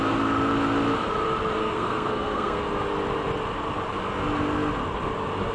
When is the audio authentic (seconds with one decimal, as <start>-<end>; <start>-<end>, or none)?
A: 0.0-1.6; 2.6-5.5